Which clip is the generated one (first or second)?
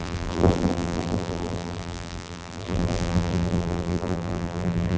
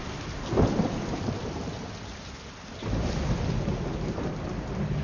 first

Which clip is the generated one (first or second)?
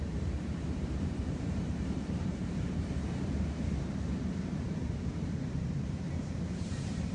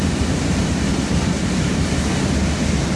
first